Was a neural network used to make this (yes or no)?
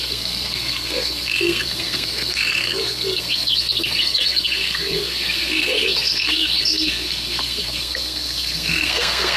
yes